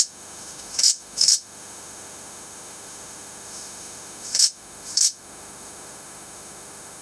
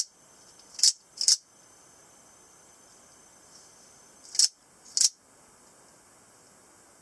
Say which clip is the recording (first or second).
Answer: second